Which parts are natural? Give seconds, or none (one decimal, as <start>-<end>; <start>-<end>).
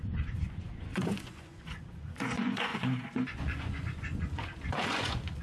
none